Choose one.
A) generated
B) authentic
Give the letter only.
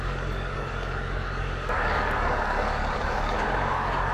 A